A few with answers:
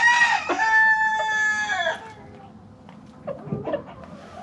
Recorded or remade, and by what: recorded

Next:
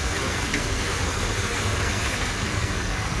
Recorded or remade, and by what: remade, codec, SNAC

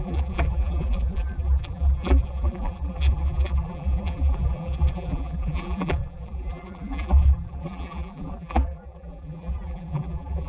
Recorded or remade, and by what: remade, vocoder, BigVGAN v2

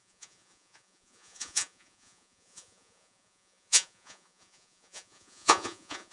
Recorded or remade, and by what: remade, vocoder, Vocos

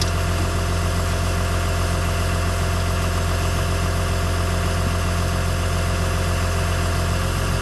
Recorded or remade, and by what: recorded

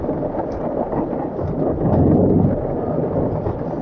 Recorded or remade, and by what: recorded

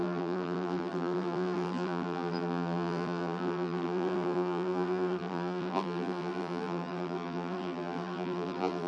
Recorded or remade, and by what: remade, vocoder, BigVGAN v2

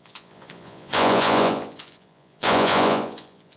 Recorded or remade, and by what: remade, vocoder, Vocos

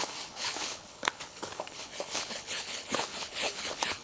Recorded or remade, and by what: remade, codec, HILCodec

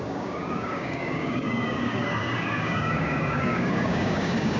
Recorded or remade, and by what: remade, codec, DAC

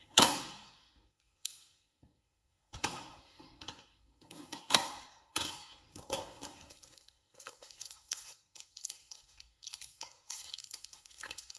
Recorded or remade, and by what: remade, codec, SNAC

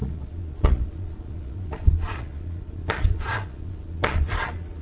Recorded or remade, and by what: remade, vocoder, Vocos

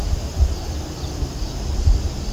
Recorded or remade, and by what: recorded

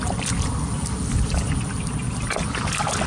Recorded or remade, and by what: recorded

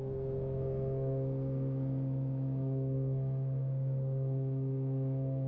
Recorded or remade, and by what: remade, codec, SNAC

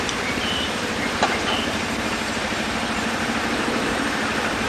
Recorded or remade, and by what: remade, vocoder, BigVGAN v2